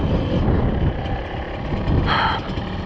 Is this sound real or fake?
real